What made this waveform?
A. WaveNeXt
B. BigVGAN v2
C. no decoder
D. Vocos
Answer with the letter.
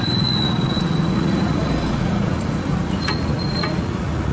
D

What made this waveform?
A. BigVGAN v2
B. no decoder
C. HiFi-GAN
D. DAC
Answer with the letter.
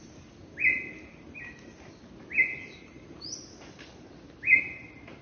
B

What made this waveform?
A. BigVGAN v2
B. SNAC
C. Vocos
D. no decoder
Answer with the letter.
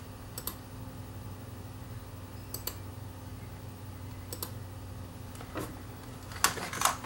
D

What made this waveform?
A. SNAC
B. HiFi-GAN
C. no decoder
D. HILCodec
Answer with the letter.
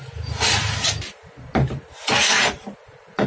C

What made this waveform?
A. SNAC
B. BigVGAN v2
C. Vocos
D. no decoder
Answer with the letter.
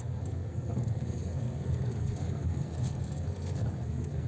A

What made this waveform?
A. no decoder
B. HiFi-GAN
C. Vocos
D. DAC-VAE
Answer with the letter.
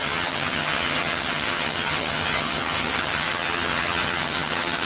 B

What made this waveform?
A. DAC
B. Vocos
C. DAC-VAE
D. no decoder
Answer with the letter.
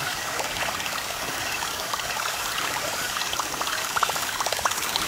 A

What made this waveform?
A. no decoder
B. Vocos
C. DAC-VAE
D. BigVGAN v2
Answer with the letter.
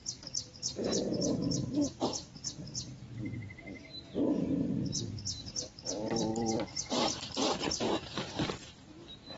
D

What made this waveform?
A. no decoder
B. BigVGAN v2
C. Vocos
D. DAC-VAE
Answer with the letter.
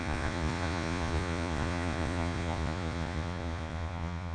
C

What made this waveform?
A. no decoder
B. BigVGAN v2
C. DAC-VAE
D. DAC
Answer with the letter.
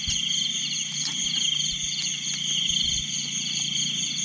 A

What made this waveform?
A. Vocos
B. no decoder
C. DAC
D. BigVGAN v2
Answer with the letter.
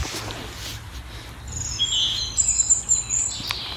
B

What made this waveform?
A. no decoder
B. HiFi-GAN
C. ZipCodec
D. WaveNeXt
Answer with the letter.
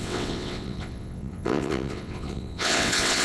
D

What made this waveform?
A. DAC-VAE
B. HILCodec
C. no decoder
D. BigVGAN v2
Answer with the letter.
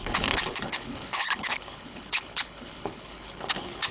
B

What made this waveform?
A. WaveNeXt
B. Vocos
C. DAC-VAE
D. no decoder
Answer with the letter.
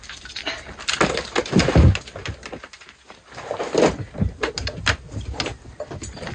D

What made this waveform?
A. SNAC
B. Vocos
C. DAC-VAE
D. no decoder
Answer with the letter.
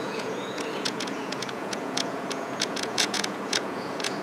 B